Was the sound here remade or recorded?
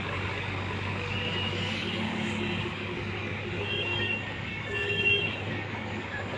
remade